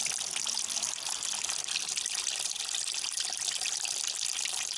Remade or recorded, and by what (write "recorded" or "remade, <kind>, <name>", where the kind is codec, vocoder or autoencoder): recorded